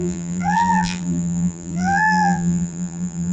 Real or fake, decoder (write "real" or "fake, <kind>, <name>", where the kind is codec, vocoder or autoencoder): fake, vocoder, BigVGAN v2